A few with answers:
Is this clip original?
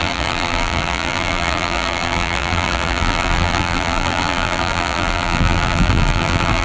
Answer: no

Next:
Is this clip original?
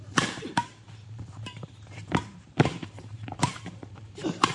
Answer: no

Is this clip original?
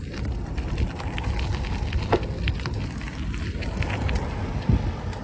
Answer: yes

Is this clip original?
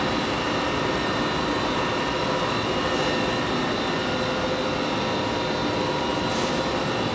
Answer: yes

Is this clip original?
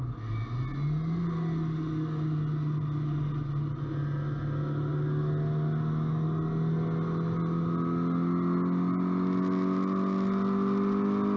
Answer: yes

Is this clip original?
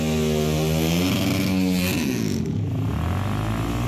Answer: yes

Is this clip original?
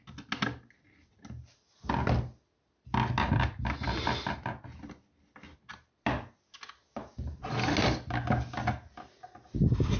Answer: yes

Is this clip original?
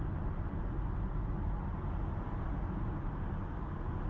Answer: yes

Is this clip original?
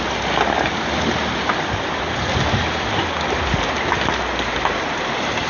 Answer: yes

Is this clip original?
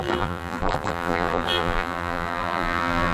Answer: no